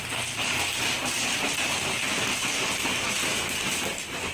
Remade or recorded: recorded